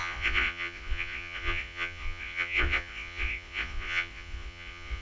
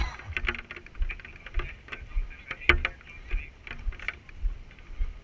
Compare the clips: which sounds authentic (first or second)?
second